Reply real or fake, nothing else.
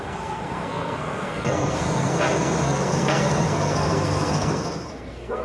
fake